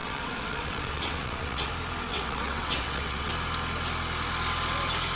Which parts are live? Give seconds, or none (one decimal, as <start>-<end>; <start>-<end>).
1.7-2.1; 3.3-5.2